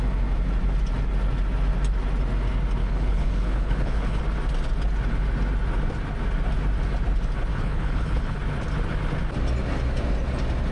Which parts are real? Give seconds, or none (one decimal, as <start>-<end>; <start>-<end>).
0.0-2.8; 4.2-7.5; 8.4-10.7